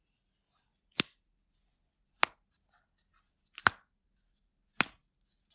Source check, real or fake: real